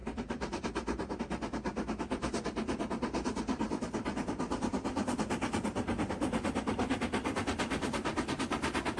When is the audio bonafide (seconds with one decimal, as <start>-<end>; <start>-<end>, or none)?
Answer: 0.0-9.0